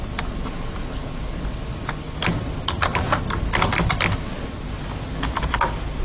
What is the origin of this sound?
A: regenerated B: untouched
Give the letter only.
B